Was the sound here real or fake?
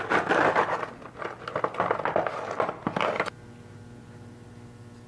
real